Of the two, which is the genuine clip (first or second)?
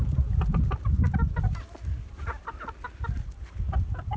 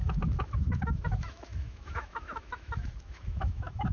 first